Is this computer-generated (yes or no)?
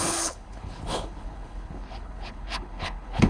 yes